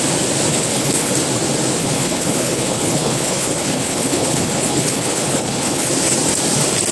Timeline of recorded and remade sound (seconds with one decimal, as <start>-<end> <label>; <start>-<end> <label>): 0.0-0.5 recorded; 0.5-1.1 remade; 1.1-1.8 recorded; 1.8-5.9 remade; 5.9-6.9 recorded

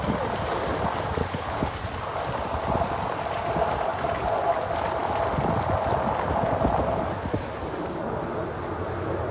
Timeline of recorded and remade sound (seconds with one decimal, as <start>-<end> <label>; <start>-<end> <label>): 0.0-1.2 recorded; 1.2-1.8 remade; 1.8-9.3 recorded

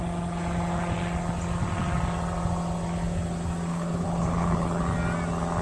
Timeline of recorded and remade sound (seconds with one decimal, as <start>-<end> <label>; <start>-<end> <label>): 0.0-3.7 recorded; 3.7-4.8 remade; 4.8-5.6 recorded

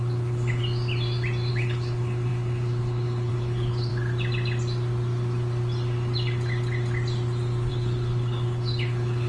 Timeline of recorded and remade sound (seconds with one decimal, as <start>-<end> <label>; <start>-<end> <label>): 0.0-0.6 remade; 0.6-1.5 recorded; 1.5-3.9 remade; 3.9-7.7 recorded; 7.7-9.3 remade

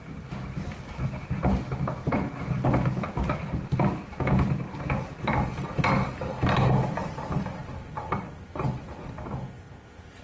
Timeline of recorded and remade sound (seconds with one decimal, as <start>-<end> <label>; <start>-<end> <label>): 0.0-10.2 recorded

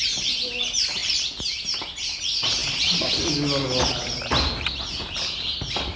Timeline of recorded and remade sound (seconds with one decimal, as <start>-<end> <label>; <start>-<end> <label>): 0.0-6.0 recorded

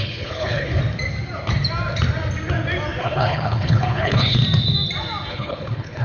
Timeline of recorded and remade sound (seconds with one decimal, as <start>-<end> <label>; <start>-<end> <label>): 0.0-0.8 remade; 0.8-3.0 recorded; 3.0-4.4 remade; 4.4-5.3 recorded; 5.3-6.0 remade

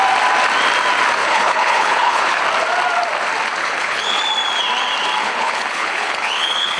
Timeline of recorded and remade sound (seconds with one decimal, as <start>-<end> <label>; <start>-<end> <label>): 0.0-1.2 recorded; 1.2-2.4 remade; 2.4-3.6 recorded; 3.6-4.2 remade; 4.2-5.2 recorded; 5.2-6.8 remade